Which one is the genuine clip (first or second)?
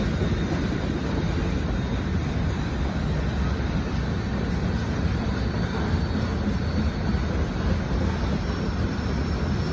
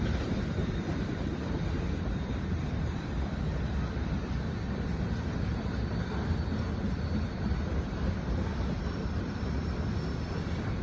first